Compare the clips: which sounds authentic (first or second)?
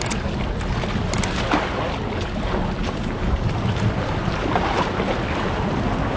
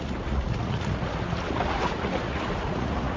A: first